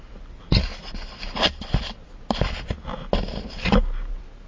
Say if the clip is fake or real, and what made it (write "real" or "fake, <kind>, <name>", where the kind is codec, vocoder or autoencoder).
real